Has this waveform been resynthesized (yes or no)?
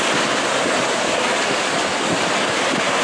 no